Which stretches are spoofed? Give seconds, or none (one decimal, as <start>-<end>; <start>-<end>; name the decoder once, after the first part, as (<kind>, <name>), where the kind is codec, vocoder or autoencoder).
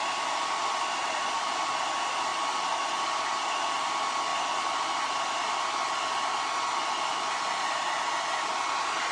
none